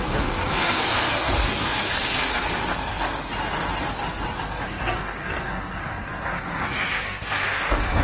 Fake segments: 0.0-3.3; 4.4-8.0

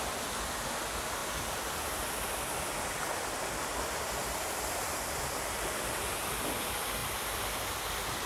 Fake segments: none

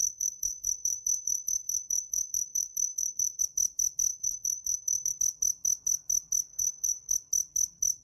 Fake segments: 0.0-3.4; 4.1-5.2; 6.5-7.1

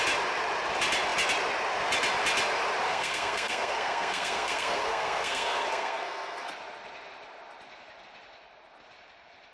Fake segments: 2.9-6.5

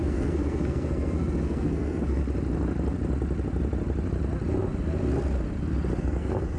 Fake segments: 0.0-2.2; 6.0-6.6